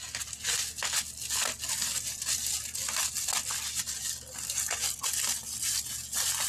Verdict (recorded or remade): recorded